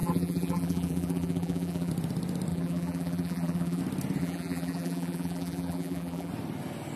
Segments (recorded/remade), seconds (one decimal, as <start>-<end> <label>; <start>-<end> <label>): 0.0-1.9 remade; 1.9-2.5 recorded; 2.5-3.8 remade; 3.8-4.2 recorded; 4.2-6.3 remade; 6.3-7.0 recorded